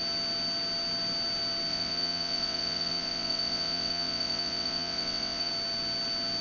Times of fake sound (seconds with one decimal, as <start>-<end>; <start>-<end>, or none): 1.7-5.5